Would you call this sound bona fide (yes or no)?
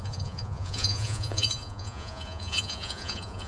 no